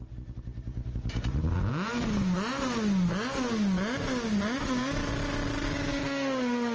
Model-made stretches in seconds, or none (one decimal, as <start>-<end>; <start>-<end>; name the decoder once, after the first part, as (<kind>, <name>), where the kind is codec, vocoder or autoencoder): none